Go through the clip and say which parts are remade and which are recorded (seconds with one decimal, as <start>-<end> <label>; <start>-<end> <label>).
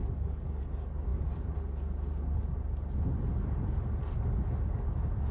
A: 0.0-0.6 remade; 0.6-5.3 recorded